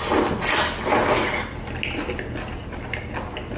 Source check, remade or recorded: recorded